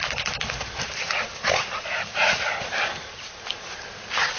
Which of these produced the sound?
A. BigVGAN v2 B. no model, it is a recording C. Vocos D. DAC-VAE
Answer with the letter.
B